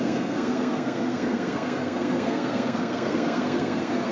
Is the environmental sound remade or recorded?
remade